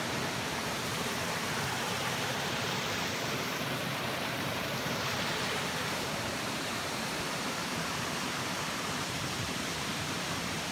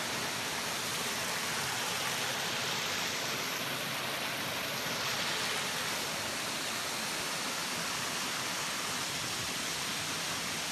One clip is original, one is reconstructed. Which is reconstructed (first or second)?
first